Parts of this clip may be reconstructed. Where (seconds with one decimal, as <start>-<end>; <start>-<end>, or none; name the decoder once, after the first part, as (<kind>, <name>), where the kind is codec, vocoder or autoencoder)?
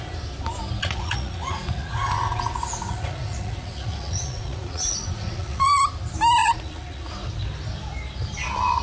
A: 0.8-5.8 (vocoder, Vocos); 6.4-7.1